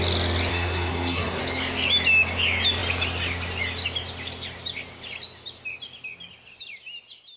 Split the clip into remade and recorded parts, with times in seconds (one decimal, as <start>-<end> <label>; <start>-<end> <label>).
0.0-0.5 recorded; 0.5-1.4 remade; 1.4-7.4 recorded